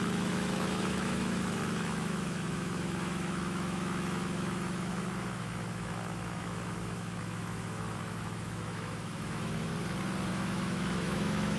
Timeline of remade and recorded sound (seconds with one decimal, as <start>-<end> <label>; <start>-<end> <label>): 0.0-9.7 remade; 9.7-10.3 recorded; 10.3-11.6 remade